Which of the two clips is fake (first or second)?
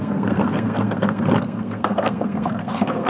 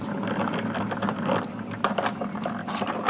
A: first